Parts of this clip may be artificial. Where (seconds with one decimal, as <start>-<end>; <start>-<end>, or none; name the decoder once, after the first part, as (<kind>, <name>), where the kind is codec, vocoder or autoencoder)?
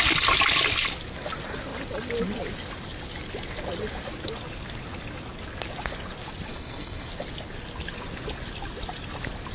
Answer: 6.5-7.1 (codec, SNAC)